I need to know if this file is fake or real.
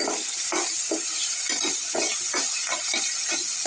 real